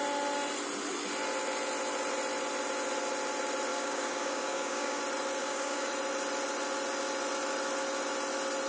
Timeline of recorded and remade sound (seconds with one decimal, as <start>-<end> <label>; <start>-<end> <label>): 0.0-3.7 recorded; 3.7-5.0 remade; 5.0-5.4 recorded; 5.4-5.9 remade; 5.9-8.7 recorded

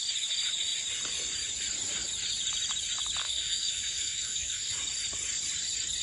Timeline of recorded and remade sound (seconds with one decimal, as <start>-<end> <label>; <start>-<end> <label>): 0.0-3.2 recorded; 3.2-4.7 remade; 4.7-6.0 recorded

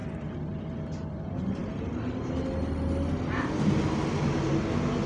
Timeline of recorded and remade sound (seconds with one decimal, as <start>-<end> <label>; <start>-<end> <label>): 0.0-5.1 recorded